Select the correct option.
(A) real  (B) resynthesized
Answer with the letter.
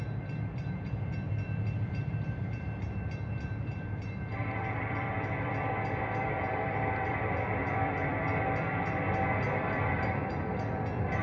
B